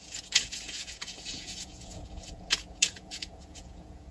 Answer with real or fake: fake